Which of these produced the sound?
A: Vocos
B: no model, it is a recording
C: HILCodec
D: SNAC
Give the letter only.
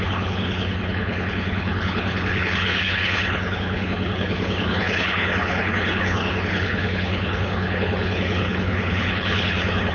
C